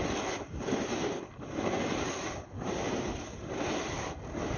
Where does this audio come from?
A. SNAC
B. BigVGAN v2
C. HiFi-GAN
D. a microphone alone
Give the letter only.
D